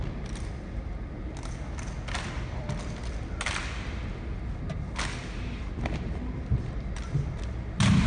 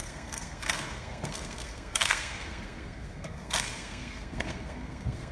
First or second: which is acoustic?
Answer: first